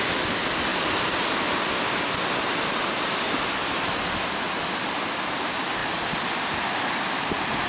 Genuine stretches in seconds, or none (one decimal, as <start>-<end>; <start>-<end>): 0.0-7.7